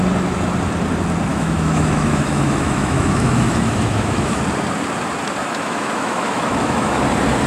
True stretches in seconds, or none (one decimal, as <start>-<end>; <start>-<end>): 0.0-1.3; 4.4-5.4; 7.0-7.5